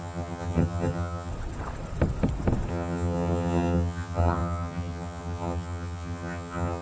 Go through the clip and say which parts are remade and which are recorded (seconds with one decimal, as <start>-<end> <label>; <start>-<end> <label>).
0.0-1.3 remade; 1.3-2.7 recorded; 2.7-6.8 remade